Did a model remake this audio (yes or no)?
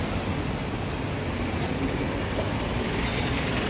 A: yes